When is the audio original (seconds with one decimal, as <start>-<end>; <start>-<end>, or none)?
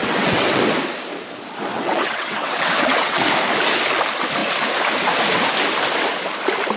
0.6-1.7; 3.2-6.8